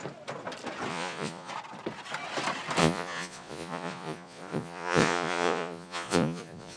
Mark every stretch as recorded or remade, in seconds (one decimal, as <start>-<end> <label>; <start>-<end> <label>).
0.0-0.9 recorded; 0.9-1.5 remade; 1.5-2.8 recorded; 2.8-6.8 remade